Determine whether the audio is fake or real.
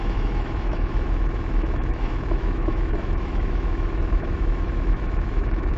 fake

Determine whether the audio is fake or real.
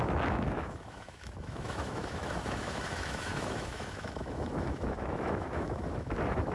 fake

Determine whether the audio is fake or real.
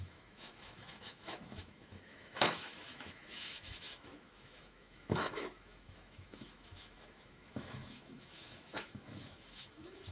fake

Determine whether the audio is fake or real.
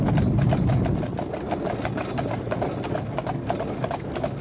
real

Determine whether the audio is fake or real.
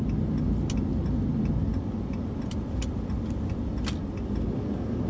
real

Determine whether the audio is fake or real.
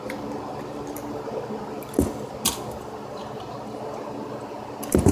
real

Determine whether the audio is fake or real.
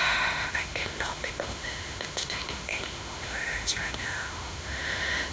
fake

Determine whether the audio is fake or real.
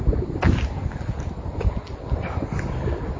real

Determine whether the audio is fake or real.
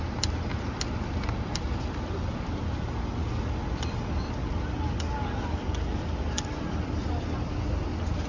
real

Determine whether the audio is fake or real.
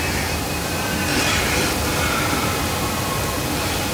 real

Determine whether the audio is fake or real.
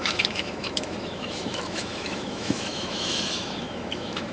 fake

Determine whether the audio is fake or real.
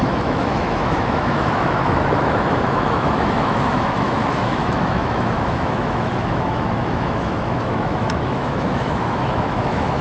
fake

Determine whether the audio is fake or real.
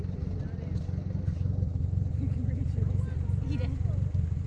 real